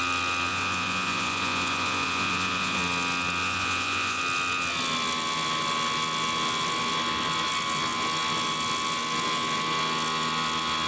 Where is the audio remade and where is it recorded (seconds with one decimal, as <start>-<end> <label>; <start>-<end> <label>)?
0.0-0.5 recorded; 0.5-2.8 remade; 2.8-3.4 recorded; 3.4-4.2 remade; 4.2-10.9 recorded

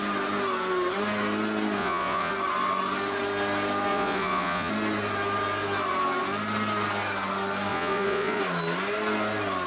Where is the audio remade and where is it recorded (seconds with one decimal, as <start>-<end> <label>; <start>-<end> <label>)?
0.0-1.8 recorded; 1.8-2.3 remade; 2.3-3.9 recorded; 3.9-4.7 remade; 4.7-7.7 recorded; 7.7-8.4 remade; 8.4-9.7 recorded

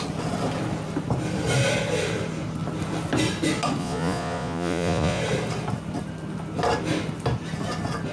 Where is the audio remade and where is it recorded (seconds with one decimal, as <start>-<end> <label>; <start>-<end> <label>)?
0.0-3.8 recorded; 3.8-5.2 remade; 5.2-8.1 recorded

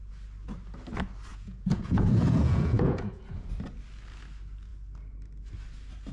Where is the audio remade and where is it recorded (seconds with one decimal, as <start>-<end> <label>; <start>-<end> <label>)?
0.0-1.3 recorded; 1.3-3.5 remade; 3.5-6.1 recorded